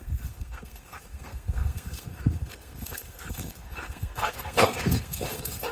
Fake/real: fake